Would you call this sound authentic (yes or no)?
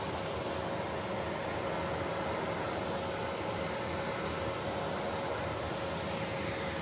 yes